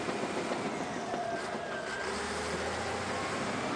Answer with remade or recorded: recorded